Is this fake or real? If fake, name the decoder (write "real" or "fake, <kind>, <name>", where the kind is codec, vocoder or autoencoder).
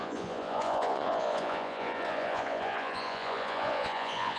fake, vocoder, Vocos